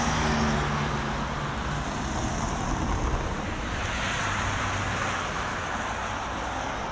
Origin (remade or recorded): recorded